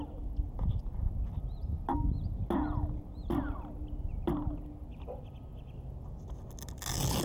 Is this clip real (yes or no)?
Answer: yes